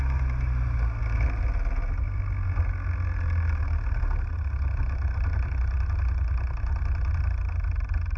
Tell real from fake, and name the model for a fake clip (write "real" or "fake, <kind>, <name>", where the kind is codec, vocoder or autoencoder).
real